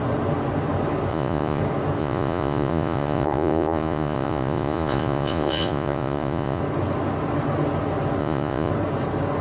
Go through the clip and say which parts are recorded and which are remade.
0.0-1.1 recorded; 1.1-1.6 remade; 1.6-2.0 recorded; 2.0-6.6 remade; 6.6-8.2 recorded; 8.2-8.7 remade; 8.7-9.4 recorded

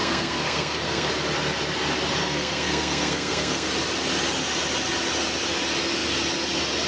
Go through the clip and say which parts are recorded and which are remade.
0.0-1.1 remade; 1.1-2.2 recorded; 2.2-3.7 remade; 3.7-6.9 recorded

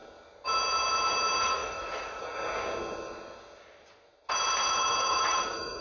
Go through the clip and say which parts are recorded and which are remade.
0.0-1.4 recorded; 1.4-2.3 remade; 2.3-5.1 recorded; 5.1-5.8 remade

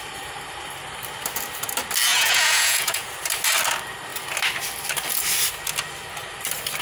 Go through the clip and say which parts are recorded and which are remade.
0.0-2.1 recorded; 2.1-3.1 remade; 3.1-6.8 recorded

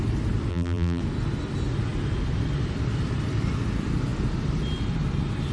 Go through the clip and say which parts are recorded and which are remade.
0.0-0.5 recorded; 0.5-1.0 remade; 1.0-5.5 recorded

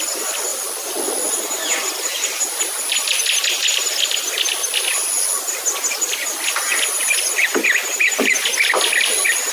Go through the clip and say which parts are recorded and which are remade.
0.0-1.8 recorded; 1.8-2.9 remade; 2.9-9.5 recorded

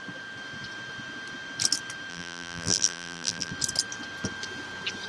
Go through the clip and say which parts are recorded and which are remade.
0.0-2.1 recorded; 2.1-3.5 remade; 3.5-5.1 recorded

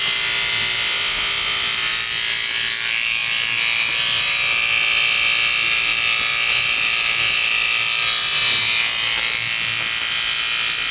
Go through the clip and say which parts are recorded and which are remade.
0.0-10.9 recorded